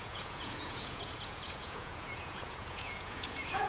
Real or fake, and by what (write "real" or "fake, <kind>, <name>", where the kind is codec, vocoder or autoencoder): fake, vocoder, Vocos